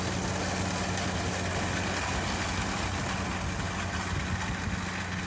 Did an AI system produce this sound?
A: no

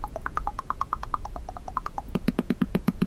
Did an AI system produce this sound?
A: yes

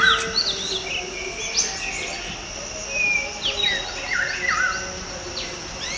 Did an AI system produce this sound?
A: no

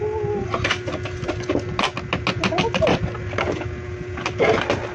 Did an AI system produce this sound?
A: no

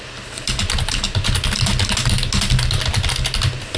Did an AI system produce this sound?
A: no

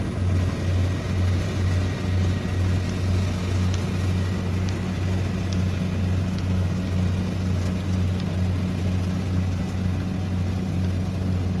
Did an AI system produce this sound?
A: no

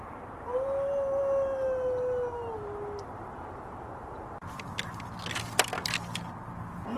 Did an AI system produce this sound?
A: no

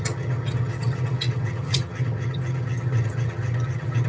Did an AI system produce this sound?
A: yes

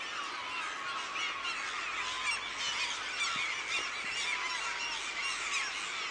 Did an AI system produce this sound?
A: no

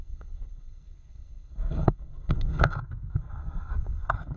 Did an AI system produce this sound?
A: yes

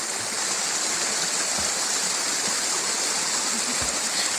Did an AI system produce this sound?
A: no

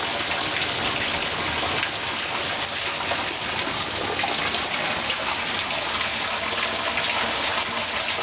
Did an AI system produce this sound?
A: no